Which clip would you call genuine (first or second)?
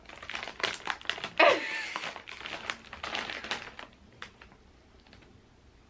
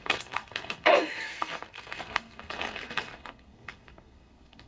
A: first